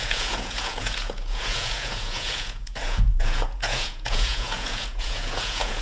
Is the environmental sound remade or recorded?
remade